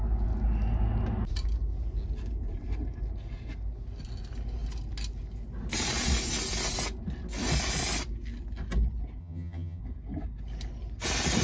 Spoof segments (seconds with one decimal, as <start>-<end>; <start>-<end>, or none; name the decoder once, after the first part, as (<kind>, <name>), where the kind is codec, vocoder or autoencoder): 9.2-9.8 (vocoder, HiFi-GAN)